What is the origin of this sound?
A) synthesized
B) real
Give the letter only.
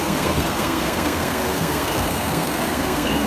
A